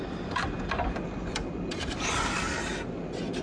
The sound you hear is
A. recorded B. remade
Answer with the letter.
A